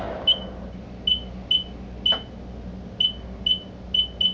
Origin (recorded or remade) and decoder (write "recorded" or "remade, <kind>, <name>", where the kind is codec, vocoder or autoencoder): recorded